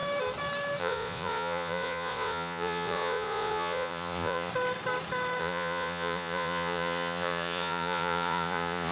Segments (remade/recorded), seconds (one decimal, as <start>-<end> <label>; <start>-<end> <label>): 0.0-0.8 recorded; 0.8-4.5 remade; 4.5-5.4 recorded; 5.4-8.9 remade